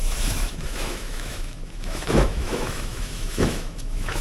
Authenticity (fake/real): fake